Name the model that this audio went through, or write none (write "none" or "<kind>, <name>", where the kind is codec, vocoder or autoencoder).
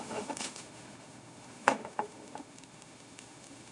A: autoencoder, DAC-VAE